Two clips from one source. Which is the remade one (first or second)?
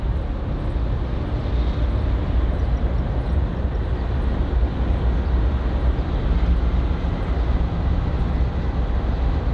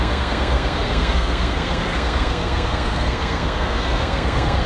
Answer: second